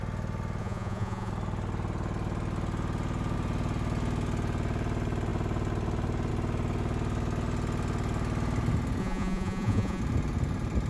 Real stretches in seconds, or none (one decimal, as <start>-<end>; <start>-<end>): 0.0-0.6; 1.3-9.0; 10.0-10.9